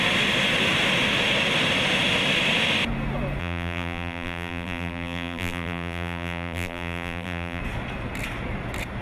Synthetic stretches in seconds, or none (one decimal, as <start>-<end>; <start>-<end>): 3.4-7.6